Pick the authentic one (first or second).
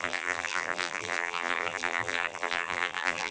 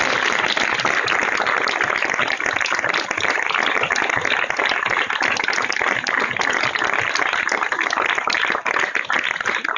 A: second